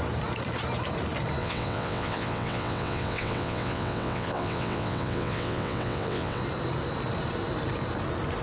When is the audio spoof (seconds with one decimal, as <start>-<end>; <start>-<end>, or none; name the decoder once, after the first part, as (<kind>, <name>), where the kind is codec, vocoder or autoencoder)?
1.4-6.4 (vocoder, WaveNeXt)